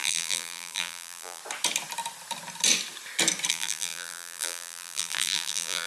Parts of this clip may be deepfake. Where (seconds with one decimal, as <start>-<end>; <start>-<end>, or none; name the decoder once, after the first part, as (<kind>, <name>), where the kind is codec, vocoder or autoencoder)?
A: 0.0-1.4 (vocoder, BigVGAN v2); 3.5-5.9